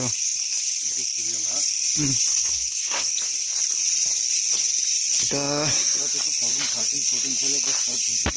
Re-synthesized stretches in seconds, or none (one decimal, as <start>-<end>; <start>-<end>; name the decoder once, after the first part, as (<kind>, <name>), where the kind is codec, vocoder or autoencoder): 2.3-3.1 (codec, SNAC); 5.2-6.0